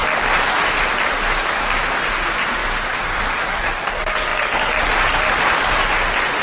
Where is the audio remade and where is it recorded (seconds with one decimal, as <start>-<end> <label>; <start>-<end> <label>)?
0.0-2.6 recorded; 2.6-3.8 remade; 3.8-4.3 recorded; 4.3-5.2 remade; 5.2-6.4 recorded